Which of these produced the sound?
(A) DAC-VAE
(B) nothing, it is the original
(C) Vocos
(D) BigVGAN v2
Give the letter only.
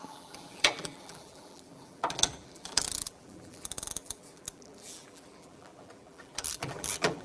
D